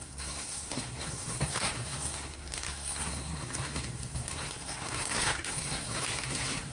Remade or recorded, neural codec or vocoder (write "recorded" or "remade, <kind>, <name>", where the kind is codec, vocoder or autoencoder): remade, codec, SNAC